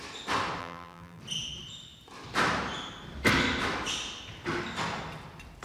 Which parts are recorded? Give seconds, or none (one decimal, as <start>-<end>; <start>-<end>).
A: 0.0-0.6; 1.2-5.6